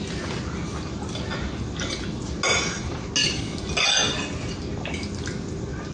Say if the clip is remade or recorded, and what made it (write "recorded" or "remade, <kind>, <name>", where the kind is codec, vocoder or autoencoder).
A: recorded